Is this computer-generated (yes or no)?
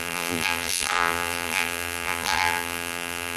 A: yes